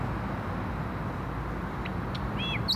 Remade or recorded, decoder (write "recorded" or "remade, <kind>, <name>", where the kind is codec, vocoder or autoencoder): recorded